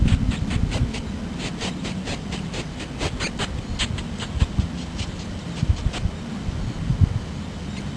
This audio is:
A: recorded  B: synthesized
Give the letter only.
A